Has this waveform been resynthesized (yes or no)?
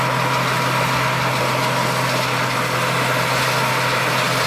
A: no